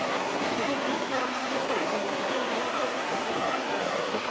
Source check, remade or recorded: remade